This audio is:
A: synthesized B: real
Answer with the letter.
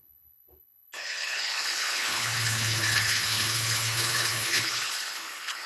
A